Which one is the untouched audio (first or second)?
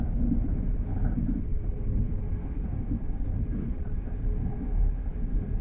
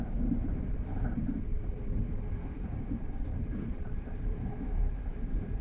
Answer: first